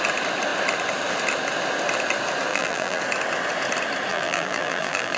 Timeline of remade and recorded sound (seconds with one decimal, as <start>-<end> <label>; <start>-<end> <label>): 0.0-2.5 recorded; 2.5-3.0 remade; 3.0-4.1 recorded; 4.1-5.2 remade

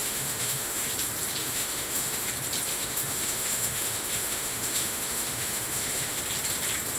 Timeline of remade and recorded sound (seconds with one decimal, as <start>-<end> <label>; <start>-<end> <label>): 0.0-0.9 remade; 0.9-1.4 recorded; 1.4-2.3 remade; 2.3-2.7 recorded; 2.7-6.2 remade; 6.2-7.0 recorded

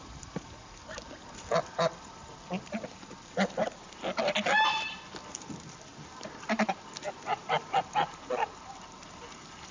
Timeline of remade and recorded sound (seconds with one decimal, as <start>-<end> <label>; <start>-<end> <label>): 0.0-9.7 recorded

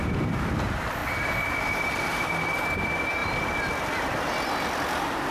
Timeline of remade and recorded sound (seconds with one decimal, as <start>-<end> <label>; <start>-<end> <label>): 0.0-5.3 recorded

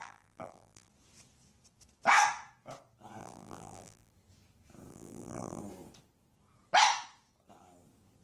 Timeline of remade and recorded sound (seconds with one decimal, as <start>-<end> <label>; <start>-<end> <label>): 0.0-0.9 remade; 0.9-3.2 recorded; 3.2-4.1 remade; 4.1-4.9 recorded; 4.9-5.6 remade; 5.6-8.2 recorded

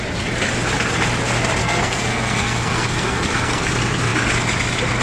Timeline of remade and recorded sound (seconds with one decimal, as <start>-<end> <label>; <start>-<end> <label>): 0.0-1.6 recorded; 1.6-3.6 remade; 3.6-5.0 recorded